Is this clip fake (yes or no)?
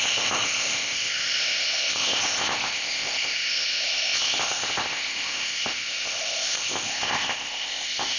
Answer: yes